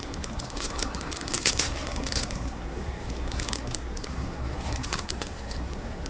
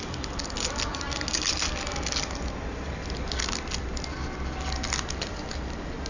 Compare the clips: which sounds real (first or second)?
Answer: second